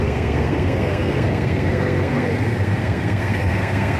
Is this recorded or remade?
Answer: remade